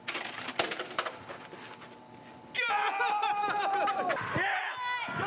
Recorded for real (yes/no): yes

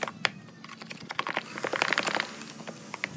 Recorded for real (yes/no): yes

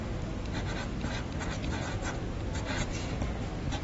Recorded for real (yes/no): yes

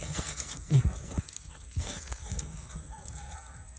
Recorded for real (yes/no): no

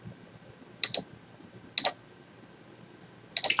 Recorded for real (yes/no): yes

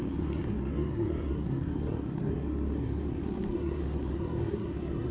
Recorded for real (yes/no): no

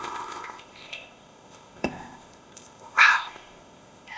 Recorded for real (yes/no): no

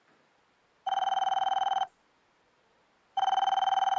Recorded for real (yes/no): no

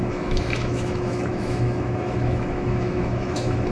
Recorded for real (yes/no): no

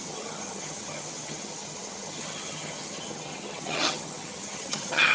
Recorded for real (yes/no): no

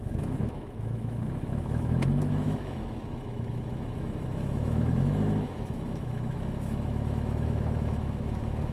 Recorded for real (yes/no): no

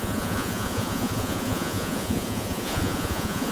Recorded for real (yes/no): no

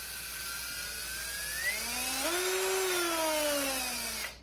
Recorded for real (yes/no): yes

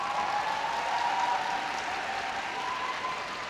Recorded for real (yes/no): yes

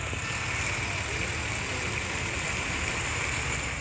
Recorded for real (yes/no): yes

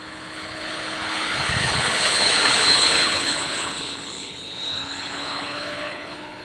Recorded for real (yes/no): no